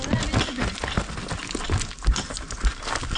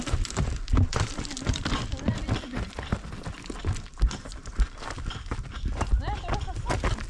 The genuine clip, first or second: first